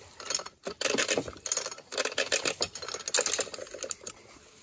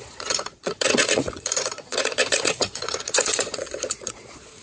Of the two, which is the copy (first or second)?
second